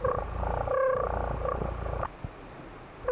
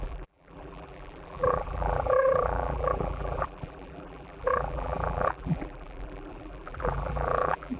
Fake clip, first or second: second